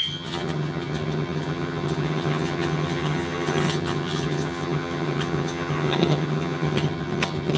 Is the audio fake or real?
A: fake